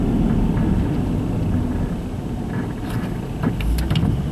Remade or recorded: recorded